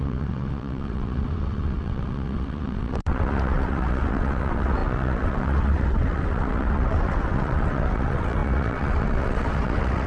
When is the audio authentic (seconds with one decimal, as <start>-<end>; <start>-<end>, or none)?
none